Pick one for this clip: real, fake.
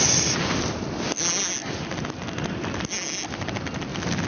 real